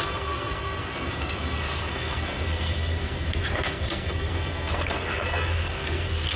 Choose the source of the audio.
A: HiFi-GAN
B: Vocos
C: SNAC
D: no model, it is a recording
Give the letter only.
C